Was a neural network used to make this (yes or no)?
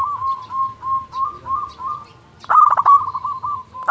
no